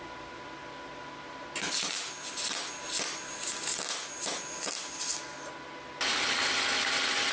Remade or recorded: recorded